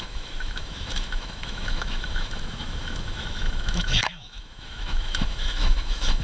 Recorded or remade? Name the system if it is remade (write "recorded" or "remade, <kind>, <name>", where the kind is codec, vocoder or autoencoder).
remade, autoencoder, DAC-VAE